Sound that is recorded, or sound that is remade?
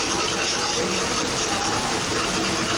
recorded